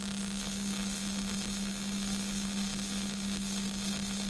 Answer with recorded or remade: recorded